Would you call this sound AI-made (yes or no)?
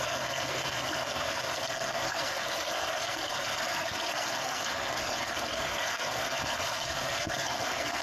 yes